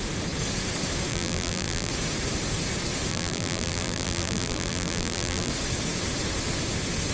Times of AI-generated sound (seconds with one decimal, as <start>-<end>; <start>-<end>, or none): 1.1-1.9; 3.1-5.5